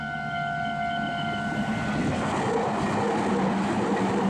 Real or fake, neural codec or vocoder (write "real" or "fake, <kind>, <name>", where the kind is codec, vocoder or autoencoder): real